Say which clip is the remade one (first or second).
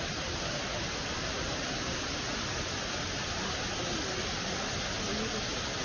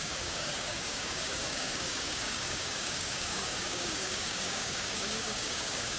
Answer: second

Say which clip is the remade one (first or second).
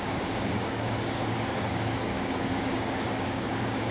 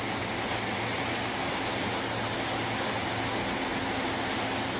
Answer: first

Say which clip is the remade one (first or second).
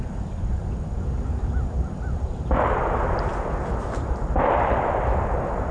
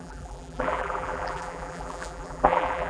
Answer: second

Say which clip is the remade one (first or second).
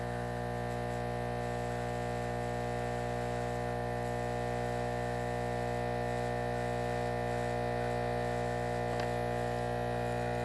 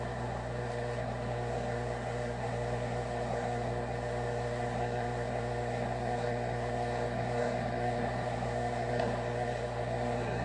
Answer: second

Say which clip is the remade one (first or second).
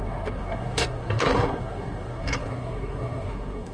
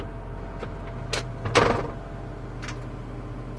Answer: first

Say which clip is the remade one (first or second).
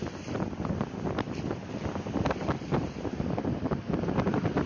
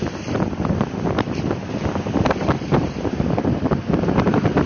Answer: second